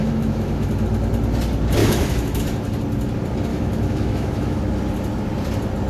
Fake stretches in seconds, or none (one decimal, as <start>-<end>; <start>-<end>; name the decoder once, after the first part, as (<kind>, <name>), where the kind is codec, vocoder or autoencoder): 0.0-0.7 (autoencoder, DAC-VAE); 1.8-2.4; 3.5-4.6